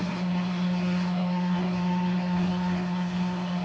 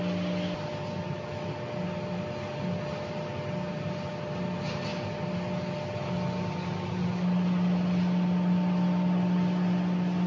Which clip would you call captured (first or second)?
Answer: second